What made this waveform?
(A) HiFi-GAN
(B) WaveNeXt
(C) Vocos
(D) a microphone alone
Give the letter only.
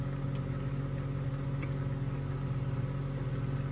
D